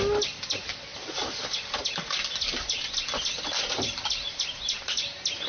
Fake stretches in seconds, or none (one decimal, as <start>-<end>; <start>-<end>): none